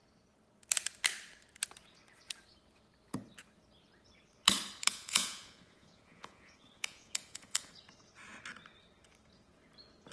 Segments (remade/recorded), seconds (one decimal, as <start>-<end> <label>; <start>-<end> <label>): 0.0-4.9 recorded; 4.9-7.7 remade; 7.7-10.1 recorded